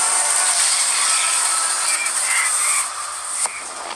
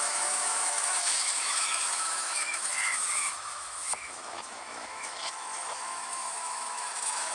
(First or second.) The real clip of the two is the first